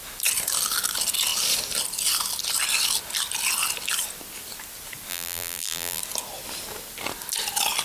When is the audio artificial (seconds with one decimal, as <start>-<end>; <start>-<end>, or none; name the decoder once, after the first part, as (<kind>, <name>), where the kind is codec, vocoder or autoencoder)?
5.1-6.0 (vocoder, BigVGAN v2)